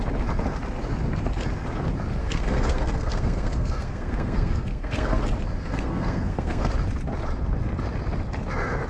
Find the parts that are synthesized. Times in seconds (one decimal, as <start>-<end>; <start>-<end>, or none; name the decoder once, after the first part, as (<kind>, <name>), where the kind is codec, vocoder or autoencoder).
2.2-5.2 (codec, SNAC); 5.7-6.7